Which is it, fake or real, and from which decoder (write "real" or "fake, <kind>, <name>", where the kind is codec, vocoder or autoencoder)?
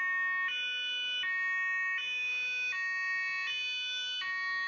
real